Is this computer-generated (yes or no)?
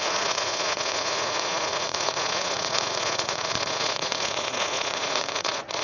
yes